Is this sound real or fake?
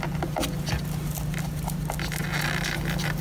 real